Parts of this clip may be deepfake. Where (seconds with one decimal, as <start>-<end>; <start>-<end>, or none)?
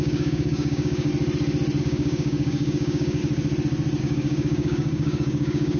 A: 0.0-1.1; 1.8-3.2; 4.0-5.8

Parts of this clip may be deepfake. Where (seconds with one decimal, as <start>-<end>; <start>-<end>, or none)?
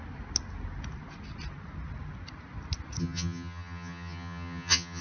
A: 3.0-5.0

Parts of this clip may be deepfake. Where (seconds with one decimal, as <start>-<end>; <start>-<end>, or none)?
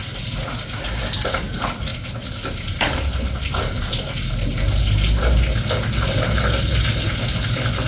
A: none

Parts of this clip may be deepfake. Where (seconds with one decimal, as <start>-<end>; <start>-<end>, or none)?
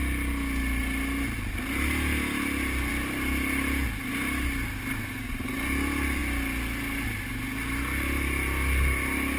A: none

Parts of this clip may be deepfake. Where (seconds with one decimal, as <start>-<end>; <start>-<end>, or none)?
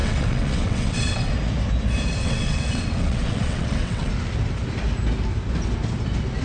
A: 0.0-1.3; 2.2-4.1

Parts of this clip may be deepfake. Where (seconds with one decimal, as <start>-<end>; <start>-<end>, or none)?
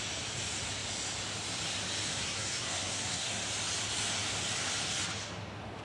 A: 2.1-3.4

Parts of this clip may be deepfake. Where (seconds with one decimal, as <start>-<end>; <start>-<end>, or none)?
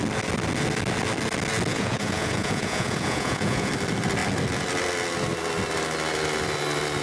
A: 1.7-3.7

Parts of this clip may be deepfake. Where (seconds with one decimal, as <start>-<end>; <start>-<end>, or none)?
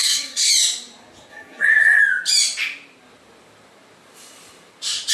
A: 0.0-0.5; 1.3-2.0